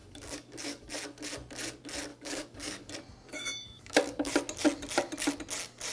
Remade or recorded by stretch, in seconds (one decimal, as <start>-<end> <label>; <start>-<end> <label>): 0.0-0.9 remade; 0.9-2.1 recorded; 2.1-2.9 remade; 2.9-3.3 recorded; 3.3-4.3 remade; 4.3-5.9 recorded